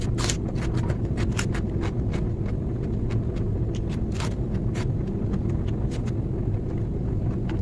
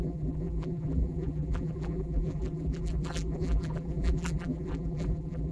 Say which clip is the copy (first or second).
second